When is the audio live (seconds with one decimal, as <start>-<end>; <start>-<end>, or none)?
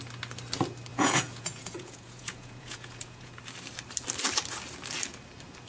0.0-0.9; 3.4-5.7